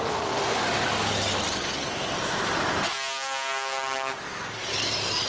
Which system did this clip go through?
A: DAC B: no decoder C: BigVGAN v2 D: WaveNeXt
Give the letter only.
B